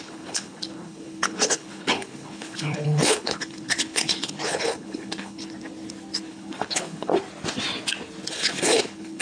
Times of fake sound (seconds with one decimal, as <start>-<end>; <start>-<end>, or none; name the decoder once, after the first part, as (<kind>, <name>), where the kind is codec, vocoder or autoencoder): 0.0-5.4 (codec, HILCodec); 6.3-7.1; 8.3-9.2